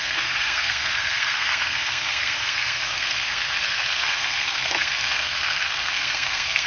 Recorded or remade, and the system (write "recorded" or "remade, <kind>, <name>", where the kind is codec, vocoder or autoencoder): remade, codec, SNAC